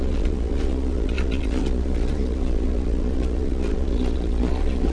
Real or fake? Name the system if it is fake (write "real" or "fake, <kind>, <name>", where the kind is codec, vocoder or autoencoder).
fake, vocoder, Vocos